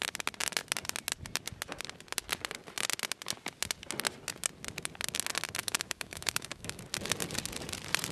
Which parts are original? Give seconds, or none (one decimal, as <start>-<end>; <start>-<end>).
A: 0.0-5.6; 6.8-8.1